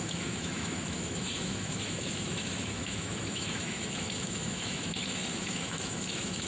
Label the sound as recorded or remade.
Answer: remade